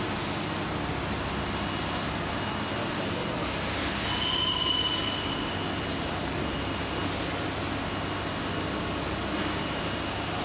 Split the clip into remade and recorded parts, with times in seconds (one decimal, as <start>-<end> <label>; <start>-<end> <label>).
0.0-10.4 recorded